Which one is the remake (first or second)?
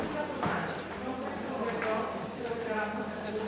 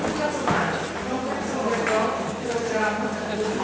first